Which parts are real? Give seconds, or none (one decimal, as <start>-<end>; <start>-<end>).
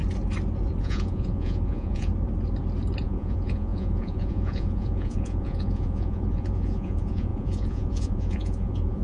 0.0-0.8; 2.1-3.0